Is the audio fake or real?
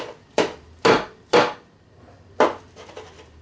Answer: real